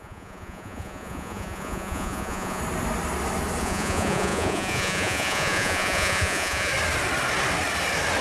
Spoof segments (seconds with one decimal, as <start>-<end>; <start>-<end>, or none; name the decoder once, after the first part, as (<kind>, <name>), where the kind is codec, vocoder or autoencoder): 0.0-2.6 (vocoder, Vocos); 3.6-6.7